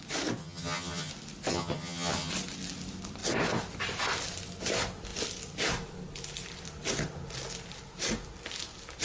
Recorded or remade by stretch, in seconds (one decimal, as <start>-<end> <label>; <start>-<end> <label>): 0.0-0.4 recorded; 0.4-1.1 remade; 1.1-1.5 recorded; 1.5-2.3 remade; 2.3-9.0 recorded